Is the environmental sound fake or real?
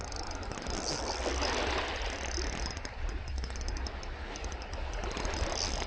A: real